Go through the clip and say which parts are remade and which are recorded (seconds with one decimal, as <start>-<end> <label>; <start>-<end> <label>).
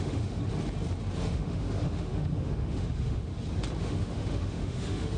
0.0-0.4 remade; 0.4-1.2 recorded; 1.2-3.3 remade; 3.3-3.8 recorded; 3.8-5.2 remade